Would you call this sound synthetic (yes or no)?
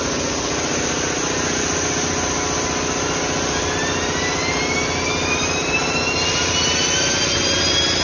no